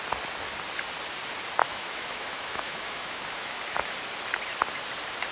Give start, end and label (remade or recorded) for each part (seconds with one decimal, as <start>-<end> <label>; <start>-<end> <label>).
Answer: 0.0-1.6 recorded; 1.6-3.6 remade; 3.6-5.3 recorded